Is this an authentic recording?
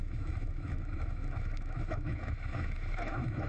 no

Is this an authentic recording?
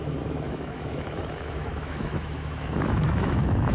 no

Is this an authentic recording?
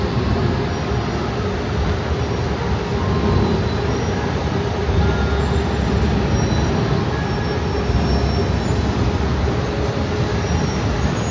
yes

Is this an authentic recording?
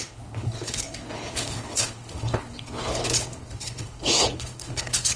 no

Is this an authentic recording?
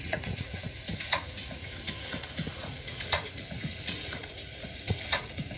no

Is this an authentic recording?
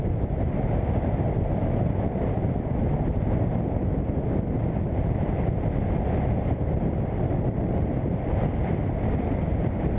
yes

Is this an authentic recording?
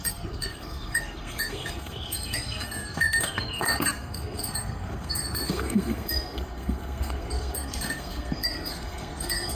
no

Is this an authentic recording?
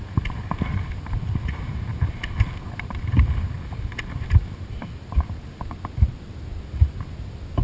yes